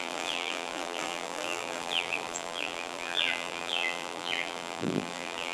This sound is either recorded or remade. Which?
remade